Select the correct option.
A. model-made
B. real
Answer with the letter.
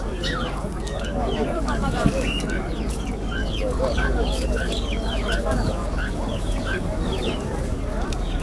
A